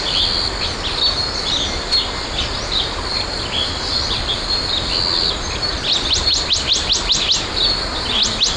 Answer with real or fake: real